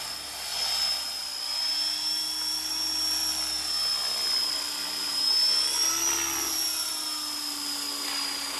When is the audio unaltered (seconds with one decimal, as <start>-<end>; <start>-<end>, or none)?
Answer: 0.0-8.6